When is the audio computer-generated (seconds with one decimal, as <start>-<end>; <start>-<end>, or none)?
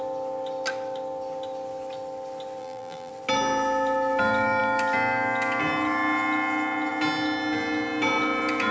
2.6-3.1